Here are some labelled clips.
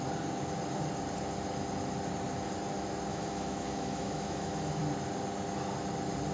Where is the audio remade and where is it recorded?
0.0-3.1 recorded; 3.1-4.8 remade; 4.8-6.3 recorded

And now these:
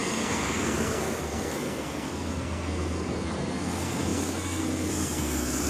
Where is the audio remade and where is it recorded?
0.0-5.7 remade

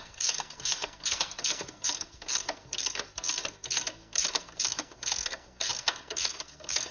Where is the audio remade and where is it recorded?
0.0-6.9 remade

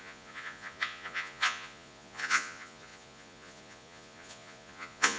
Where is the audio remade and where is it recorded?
0.0-5.2 remade

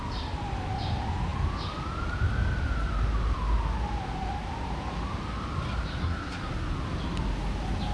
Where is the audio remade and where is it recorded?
0.0-6.0 recorded; 6.0-6.5 remade; 6.5-7.9 recorded

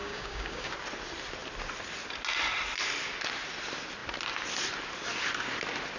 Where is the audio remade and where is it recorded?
0.0-0.7 remade; 0.7-6.0 recorded

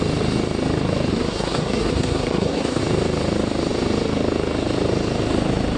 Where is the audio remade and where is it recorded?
0.0-1.1 recorded; 1.1-2.8 remade; 2.8-5.8 recorded

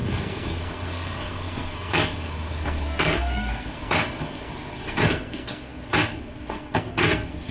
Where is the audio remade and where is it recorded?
0.0-7.5 remade